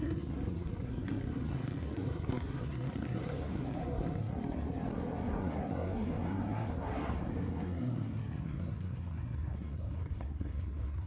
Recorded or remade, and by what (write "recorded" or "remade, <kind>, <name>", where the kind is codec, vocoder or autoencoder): remade, codec, SNAC